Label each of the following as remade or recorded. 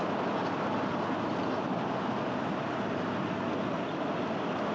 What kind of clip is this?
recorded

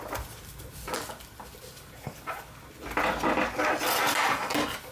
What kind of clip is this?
recorded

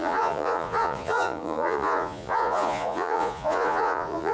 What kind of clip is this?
remade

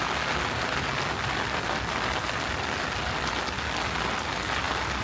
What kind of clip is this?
recorded